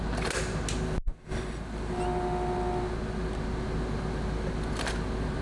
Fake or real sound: real